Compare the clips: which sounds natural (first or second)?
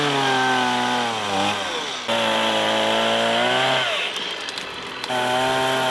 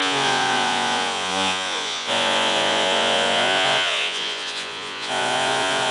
first